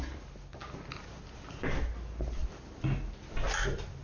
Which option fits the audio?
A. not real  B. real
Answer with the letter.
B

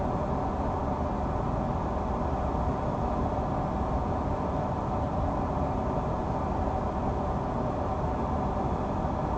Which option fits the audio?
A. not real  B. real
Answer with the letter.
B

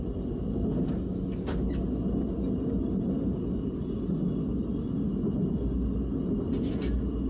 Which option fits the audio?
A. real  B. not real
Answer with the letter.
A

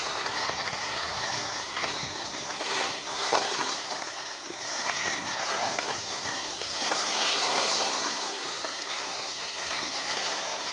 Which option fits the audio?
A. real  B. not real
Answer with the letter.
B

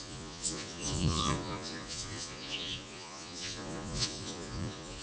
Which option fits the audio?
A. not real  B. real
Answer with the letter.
A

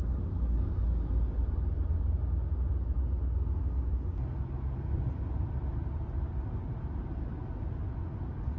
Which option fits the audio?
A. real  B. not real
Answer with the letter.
A